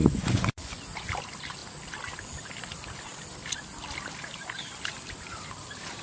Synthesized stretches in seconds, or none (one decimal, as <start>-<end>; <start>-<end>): 0.0-0.8